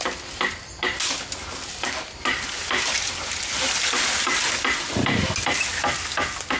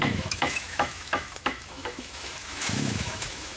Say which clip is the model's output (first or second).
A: second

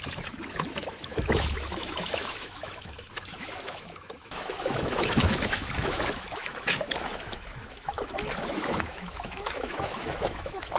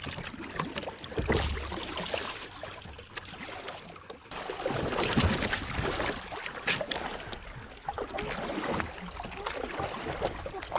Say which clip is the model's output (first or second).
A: first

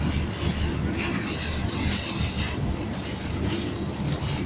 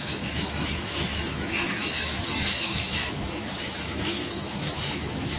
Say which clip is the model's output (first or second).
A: second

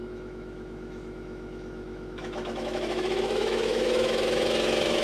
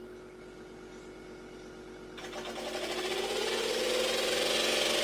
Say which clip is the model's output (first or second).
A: first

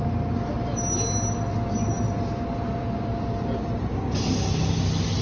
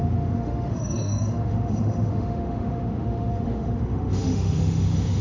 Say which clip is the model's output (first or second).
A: second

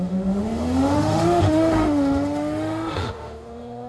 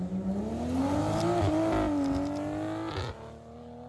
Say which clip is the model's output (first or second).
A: first